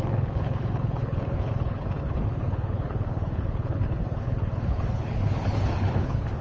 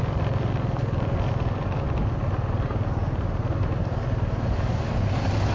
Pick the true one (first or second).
second